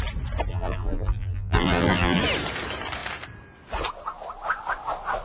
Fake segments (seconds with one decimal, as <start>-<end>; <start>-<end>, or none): 0.5-2.2